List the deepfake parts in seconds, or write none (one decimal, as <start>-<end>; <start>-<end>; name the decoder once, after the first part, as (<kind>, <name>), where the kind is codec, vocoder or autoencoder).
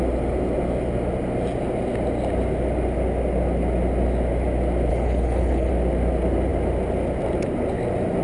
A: 4.9-5.7 (codec, HILCodec)